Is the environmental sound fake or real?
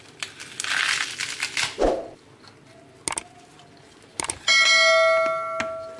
real